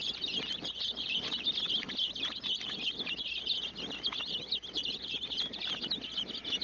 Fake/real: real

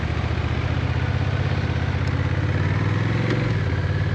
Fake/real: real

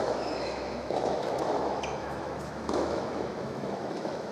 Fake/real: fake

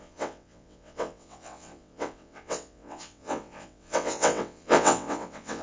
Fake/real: fake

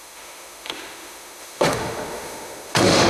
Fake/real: fake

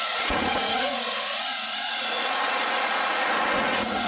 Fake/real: fake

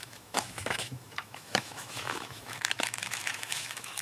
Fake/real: fake